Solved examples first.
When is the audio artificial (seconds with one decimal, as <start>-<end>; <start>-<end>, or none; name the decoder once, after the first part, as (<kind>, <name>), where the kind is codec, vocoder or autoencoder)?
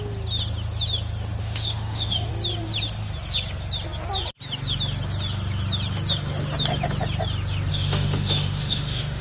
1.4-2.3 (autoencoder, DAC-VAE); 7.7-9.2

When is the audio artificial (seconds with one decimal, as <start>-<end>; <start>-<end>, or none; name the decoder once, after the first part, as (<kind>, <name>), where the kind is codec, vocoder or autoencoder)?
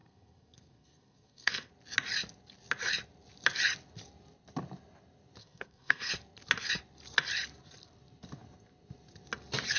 0.0-1.7 (codec, SNAC); 5.4-6.1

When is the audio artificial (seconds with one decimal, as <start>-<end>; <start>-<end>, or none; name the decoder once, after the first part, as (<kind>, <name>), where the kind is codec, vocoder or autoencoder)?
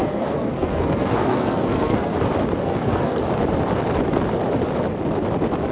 0.0-2.1 (codec, SNAC); 2.6-3.2